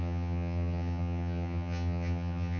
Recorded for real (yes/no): no